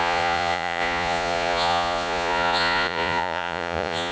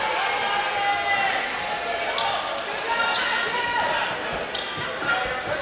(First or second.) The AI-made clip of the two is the first